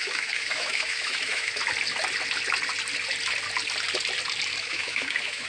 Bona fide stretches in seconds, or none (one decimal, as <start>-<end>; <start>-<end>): 1.6-4.6